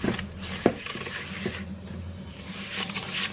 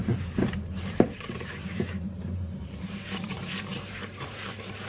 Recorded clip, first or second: first